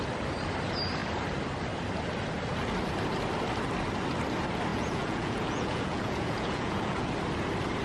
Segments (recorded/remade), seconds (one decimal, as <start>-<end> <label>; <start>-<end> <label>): 0.0-4.7 recorded; 4.7-7.1 remade; 7.1-7.8 recorded